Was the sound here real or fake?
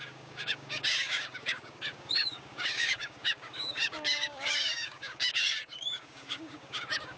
fake